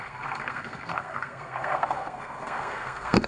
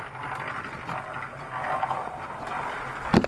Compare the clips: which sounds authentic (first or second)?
second